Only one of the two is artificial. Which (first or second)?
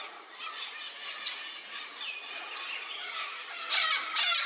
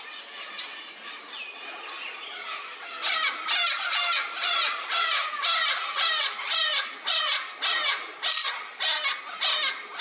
first